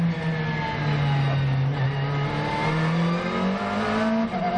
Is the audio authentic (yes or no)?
yes